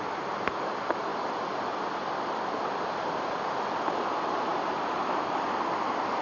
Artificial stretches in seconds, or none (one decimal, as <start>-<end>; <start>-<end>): none